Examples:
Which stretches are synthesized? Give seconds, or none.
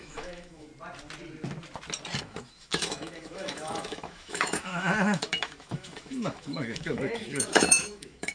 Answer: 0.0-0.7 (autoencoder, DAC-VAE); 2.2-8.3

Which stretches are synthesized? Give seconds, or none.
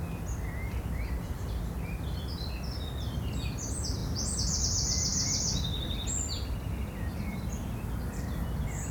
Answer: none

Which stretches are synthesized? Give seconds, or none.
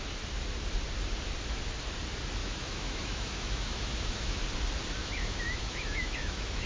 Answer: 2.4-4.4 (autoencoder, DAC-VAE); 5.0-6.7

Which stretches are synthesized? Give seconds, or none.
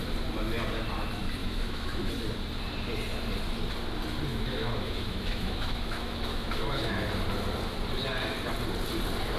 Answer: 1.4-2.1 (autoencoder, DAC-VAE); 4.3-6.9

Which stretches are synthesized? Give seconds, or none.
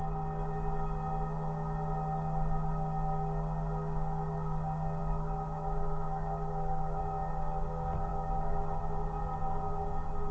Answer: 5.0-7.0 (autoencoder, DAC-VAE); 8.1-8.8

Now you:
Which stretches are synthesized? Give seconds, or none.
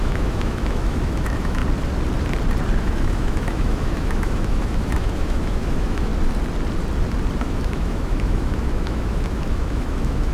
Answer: 0.0-1.6 (autoencoder, DAC-VAE); 2.8-6.1; 7.4-10.3